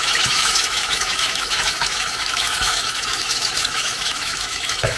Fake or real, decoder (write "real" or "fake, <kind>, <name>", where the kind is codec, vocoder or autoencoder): fake, autoencoder, DAC-VAE